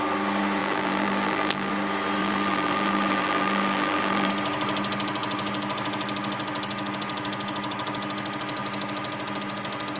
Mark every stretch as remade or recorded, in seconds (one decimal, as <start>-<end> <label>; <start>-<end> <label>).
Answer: 0.0-0.6 recorded; 0.6-1.7 remade; 1.7-2.2 recorded; 2.2-4.3 remade; 4.3-10.0 recorded